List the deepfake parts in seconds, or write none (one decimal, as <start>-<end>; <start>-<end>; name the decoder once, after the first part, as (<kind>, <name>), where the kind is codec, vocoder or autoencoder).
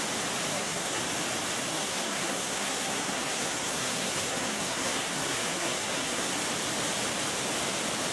0.5-1.0 (codec, SNAC); 1.7-6.3